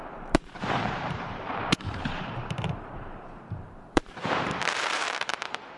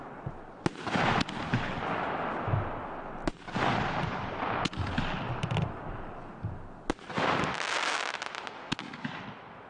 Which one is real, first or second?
second